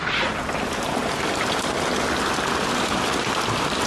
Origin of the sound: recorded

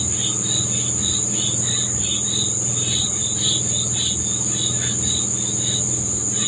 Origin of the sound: recorded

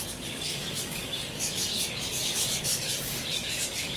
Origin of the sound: remade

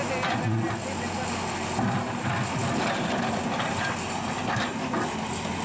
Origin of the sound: recorded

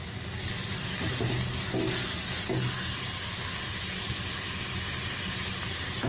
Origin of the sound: recorded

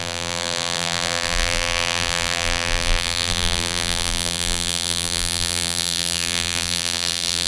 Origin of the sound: remade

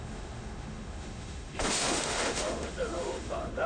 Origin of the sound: remade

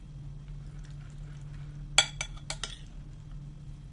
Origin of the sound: recorded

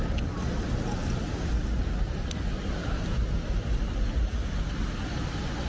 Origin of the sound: recorded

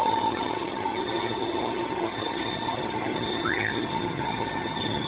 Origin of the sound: remade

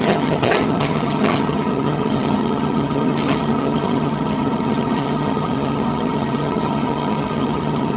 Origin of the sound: remade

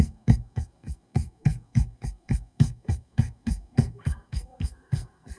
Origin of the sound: remade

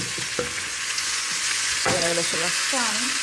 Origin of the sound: remade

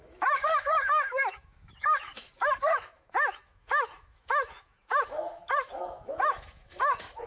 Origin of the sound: remade